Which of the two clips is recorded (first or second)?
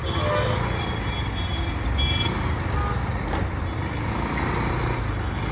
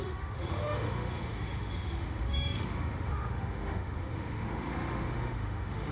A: first